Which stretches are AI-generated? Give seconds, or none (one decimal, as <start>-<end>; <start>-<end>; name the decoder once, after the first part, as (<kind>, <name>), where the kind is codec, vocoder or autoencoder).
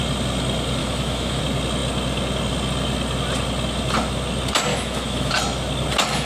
0.8-1.4 (autoencoder, DAC-VAE); 4.7-5.3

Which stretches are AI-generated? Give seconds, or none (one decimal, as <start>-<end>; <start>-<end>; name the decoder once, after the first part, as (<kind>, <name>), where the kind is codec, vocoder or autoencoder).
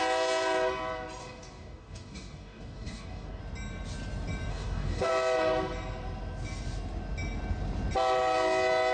1.2-3.4 (codec, DAC); 4.5-5.1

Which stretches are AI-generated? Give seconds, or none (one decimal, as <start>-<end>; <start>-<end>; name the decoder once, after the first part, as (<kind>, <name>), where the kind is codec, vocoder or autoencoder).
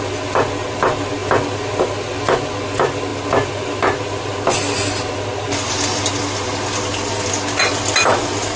none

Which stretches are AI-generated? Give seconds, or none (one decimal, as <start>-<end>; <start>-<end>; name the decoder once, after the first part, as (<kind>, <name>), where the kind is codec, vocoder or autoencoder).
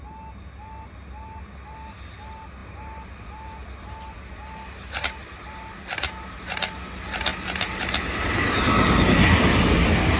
none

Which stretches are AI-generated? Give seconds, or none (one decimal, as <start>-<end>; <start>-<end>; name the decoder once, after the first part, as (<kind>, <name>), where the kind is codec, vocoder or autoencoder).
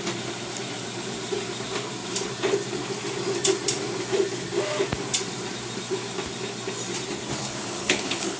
7.4-8.4 (codec, HILCodec)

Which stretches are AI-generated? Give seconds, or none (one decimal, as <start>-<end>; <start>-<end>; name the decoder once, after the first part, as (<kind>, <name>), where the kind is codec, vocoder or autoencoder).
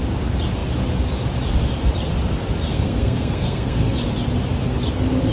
2.7-4.0 (codec, SNAC)